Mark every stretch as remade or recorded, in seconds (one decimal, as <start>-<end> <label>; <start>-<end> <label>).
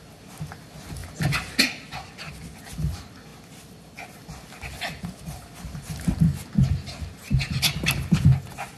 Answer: 0.0-8.8 recorded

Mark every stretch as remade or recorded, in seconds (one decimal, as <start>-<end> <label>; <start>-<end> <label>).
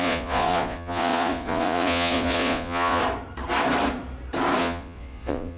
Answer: 0.0-3.0 remade; 3.0-4.6 recorded; 4.6-5.6 remade